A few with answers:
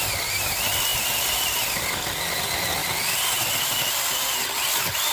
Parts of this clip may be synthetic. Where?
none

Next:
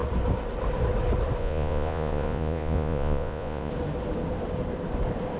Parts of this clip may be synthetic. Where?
1.4-3.7 (vocoder, Vocos)

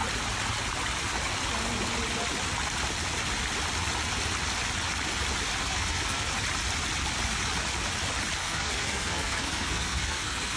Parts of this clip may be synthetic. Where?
5.6-6.3 (codec, SNAC); 8.4-10.6

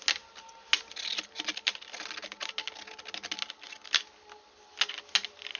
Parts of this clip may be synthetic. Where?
none

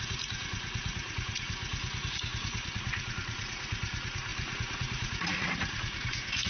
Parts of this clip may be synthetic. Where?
0.0-1.6 (vocoder, Vocos); 2.1-6.5

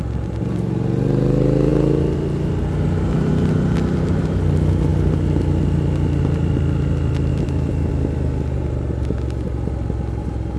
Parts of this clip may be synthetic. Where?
7.3-7.9 (vocoder, BigVGAN v2)

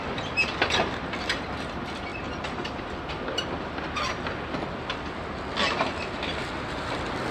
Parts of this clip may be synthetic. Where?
none